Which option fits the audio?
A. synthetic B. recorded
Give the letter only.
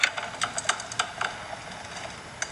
B